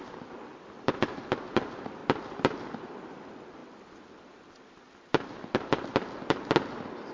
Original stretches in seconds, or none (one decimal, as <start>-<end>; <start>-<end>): 0.0-7.1